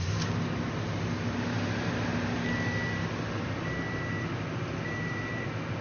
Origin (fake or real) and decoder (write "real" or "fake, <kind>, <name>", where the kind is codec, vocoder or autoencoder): real